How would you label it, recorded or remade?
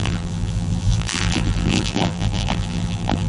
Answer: remade